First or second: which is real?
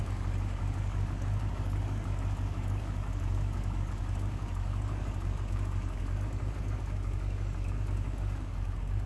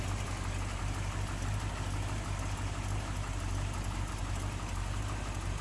second